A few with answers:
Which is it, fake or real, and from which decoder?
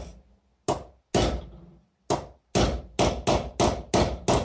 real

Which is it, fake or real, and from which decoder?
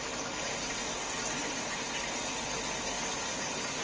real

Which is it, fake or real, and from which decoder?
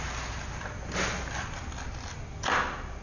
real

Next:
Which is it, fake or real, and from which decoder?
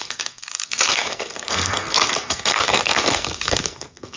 fake, codec, SNAC